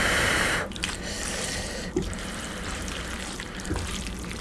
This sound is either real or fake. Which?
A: fake